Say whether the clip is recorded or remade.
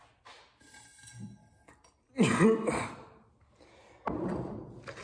recorded